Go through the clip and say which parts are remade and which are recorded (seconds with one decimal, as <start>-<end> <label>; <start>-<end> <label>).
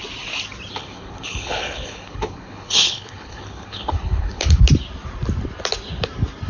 0.0-0.7 recorded; 0.7-4.6 remade; 4.6-6.5 recorded